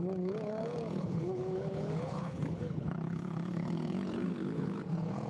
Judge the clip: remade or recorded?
remade